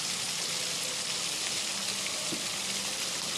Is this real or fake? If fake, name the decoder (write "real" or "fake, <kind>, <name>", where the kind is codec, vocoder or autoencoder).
real